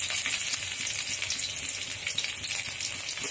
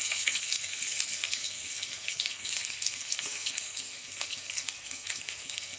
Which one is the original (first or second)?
first